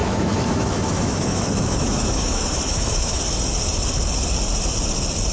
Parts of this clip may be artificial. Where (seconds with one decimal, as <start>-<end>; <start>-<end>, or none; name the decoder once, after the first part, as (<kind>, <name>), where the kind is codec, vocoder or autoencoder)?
0.0-3.2 (autoencoder, DAC-VAE)